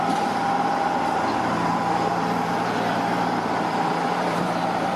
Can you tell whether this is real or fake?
fake